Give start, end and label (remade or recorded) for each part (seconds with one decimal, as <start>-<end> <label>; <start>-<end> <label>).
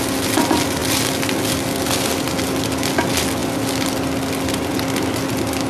0.0-5.7 recorded